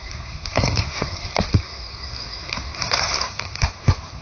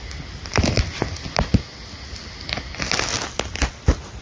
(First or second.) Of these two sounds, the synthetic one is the first